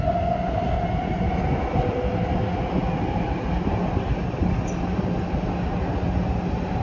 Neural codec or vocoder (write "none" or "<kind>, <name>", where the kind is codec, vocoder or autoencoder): none